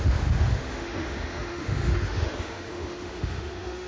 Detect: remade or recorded remade